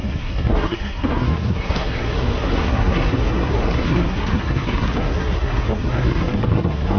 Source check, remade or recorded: remade